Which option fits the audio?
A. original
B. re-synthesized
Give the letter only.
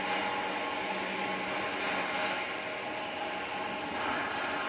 A